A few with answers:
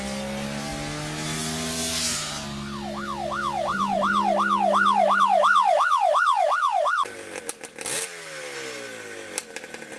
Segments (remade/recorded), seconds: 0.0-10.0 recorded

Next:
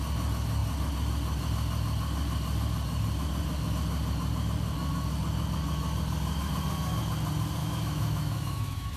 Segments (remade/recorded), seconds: 0.0-7.6 recorded; 7.6-9.0 remade